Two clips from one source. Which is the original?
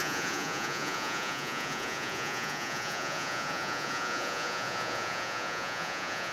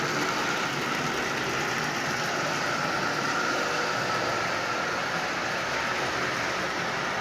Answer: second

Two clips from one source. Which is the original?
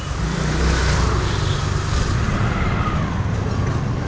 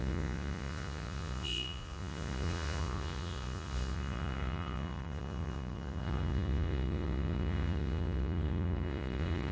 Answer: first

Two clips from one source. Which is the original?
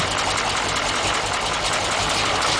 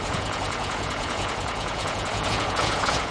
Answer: first